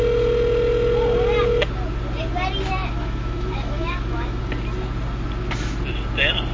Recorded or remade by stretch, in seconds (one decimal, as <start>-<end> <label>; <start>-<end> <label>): 0.0-2.8 recorded; 2.8-4.4 remade; 4.4-6.5 recorded